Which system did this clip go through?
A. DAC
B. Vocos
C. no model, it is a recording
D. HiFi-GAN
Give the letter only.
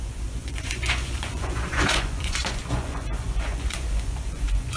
B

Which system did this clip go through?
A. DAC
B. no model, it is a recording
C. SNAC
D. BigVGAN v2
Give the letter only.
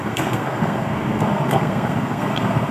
C